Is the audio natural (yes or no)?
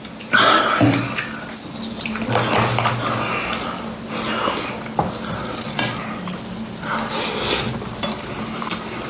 yes